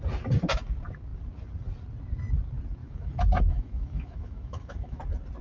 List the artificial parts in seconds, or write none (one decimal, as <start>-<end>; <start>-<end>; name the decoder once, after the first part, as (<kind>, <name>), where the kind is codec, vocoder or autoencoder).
2.8-5.0 (autoencoder, DAC-VAE)

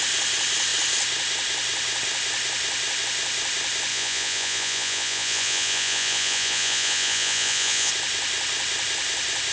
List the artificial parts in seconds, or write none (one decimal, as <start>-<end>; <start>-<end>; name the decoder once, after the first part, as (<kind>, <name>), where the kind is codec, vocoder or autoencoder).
3.9-7.9 (vocoder, Vocos)

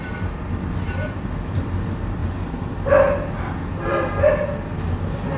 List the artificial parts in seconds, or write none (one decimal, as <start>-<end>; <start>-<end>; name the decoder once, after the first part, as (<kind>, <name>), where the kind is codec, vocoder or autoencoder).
0.0-2.2 (vocoder, BigVGAN v2); 3.7-5.4

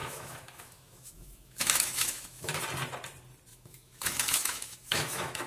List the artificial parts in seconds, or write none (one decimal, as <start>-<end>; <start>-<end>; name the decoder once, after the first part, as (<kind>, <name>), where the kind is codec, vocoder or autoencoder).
0.0-2.6 (autoencoder, DAC-VAE); 3.5-5.5